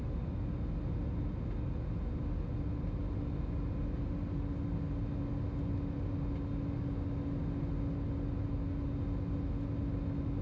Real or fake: real